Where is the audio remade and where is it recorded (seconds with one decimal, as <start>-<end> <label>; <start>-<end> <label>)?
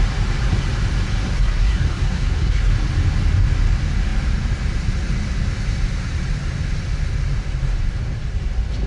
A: 0.0-1.2 recorded; 1.2-2.7 remade; 2.7-8.9 recorded